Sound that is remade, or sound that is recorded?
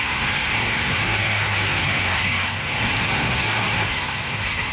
remade